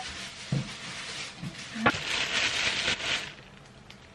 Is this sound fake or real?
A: real